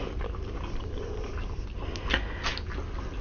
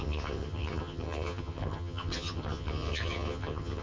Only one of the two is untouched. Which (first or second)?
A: first